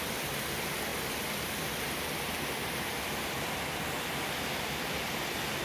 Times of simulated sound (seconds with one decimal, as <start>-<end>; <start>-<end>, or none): none